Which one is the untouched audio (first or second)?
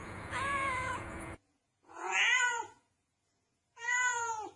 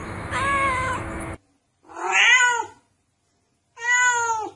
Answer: second